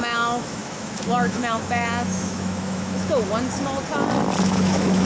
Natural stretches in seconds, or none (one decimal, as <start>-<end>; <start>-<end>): 3.2-4.4